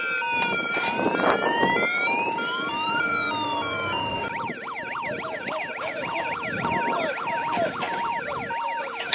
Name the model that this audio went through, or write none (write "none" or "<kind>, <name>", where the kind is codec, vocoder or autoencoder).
vocoder, BigVGAN v2